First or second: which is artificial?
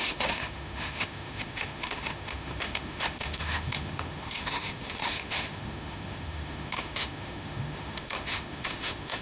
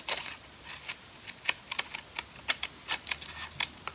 first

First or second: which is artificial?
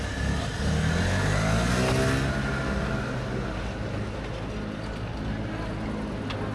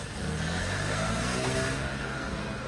second